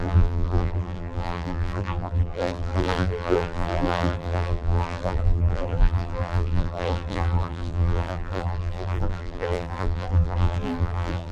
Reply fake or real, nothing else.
fake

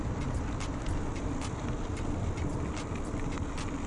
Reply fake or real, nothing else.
real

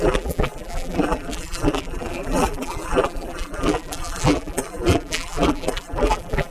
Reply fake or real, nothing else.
fake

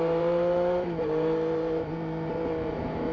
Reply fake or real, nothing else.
fake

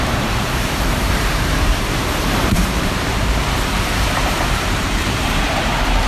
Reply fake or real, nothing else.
fake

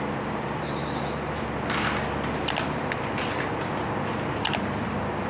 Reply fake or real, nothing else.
fake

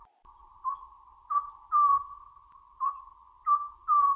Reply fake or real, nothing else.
real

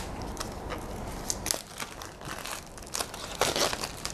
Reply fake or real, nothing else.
real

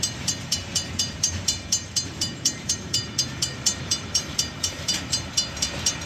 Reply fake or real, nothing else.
fake